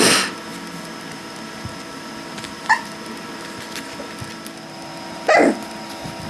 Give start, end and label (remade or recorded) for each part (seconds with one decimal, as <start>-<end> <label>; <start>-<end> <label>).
0.0-6.3 recorded